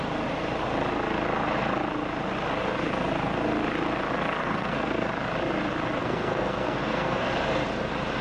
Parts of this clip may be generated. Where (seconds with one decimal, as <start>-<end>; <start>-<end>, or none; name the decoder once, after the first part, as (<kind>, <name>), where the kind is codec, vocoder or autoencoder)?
4.4-5.1 (codec, SNAC); 6.0-7.3